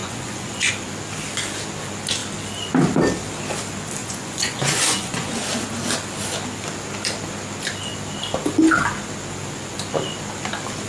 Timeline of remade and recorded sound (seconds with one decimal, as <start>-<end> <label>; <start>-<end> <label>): 0.0-0.7 remade; 0.7-4.0 recorded; 4.0-5.3 remade; 5.3-10.9 recorded